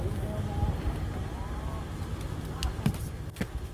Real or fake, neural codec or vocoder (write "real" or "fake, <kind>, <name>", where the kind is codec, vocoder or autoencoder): real